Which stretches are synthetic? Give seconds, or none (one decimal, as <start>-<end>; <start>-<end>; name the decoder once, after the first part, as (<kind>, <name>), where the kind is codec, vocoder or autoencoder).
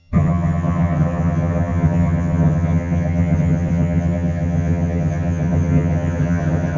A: 0.0-6.8 (vocoder, HiFi-GAN)